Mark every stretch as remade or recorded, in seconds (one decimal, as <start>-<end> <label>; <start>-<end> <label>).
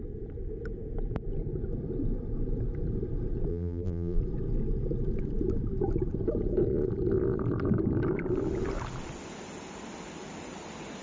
0.0-3.5 recorded; 3.5-4.2 remade; 4.2-11.0 recorded